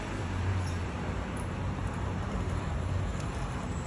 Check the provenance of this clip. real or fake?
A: fake